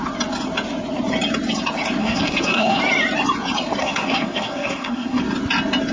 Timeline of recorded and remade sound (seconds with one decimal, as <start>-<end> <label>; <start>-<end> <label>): 0.0-2.0 recorded; 2.0-2.8 remade; 2.8-3.8 recorded; 3.8-5.2 remade; 5.2-5.9 recorded